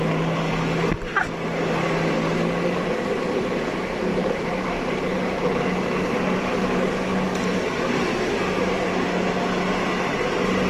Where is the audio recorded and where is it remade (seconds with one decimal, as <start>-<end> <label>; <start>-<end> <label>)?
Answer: 0.0-4.2 recorded; 4.2-5.4 remade; 5.4-10.7 recorded